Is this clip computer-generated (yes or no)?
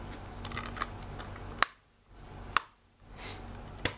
no